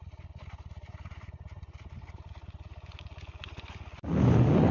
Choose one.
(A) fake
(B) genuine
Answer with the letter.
B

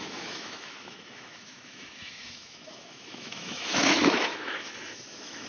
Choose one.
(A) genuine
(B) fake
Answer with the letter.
B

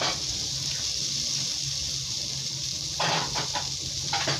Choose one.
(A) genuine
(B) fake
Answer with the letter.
A